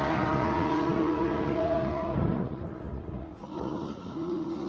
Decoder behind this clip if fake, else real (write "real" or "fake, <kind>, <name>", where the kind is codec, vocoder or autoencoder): fake, vocoder, Vocos